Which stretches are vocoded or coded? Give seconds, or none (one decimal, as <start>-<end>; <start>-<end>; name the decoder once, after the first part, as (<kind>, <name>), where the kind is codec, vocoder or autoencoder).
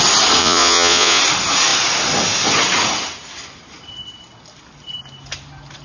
0.4-1.2 (vocoder, Vocos)